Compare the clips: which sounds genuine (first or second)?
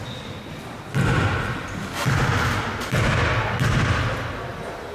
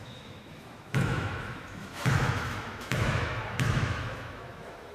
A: first